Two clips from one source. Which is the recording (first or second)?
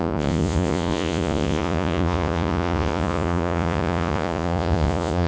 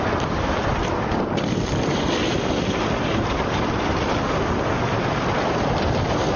second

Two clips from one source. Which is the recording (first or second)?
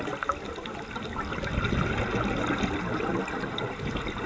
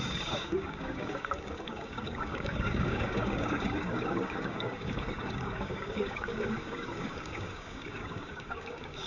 first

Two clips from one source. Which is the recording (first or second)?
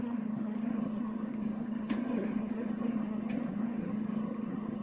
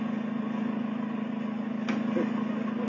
second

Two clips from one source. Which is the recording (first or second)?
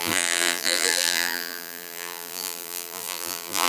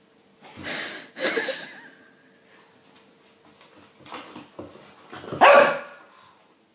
second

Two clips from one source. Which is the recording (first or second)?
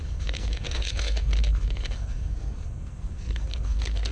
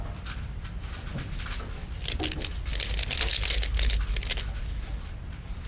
second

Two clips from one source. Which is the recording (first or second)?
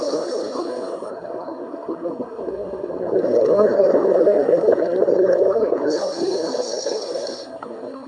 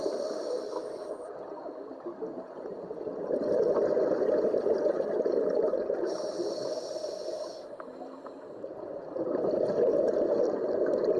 second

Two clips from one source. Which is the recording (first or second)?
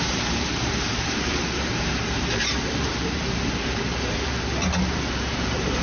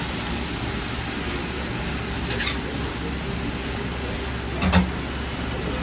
second